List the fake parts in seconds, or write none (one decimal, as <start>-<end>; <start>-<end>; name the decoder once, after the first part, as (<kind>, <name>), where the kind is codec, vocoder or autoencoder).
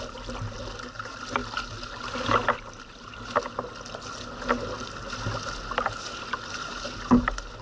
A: none